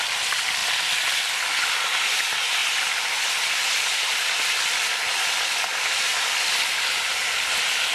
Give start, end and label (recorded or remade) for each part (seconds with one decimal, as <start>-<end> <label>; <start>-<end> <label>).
0.0-2.6 recorded; 2.6-3.5 remade; 3.5-7.9 recorded